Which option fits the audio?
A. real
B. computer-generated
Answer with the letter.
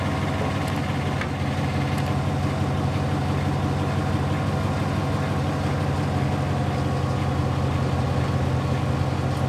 A